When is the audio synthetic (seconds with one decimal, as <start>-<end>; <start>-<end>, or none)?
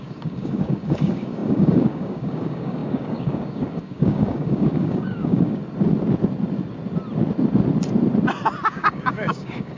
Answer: 0.0-5.6; 8.7-9.8